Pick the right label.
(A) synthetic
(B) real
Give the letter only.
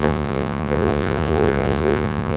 A